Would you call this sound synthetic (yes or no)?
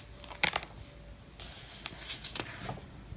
no